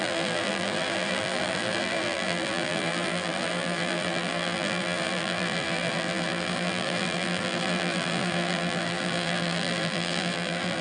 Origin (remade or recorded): remade